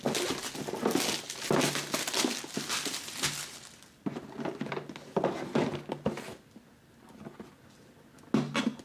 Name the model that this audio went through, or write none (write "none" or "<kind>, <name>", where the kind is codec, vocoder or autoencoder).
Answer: none